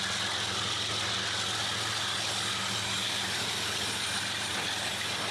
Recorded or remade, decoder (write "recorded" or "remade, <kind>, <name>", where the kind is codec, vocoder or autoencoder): recorded